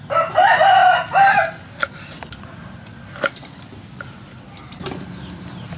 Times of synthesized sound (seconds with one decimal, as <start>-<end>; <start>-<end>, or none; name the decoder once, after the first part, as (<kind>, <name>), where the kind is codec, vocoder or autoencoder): none